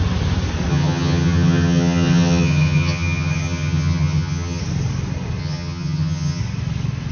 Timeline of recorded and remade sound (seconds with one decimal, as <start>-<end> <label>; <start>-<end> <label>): 0.0-0.7 recorded; 0.7-4.6 remade; 4.6-5.4 recorded; 5.4-6.4 remade; 6.4-7.1 recorded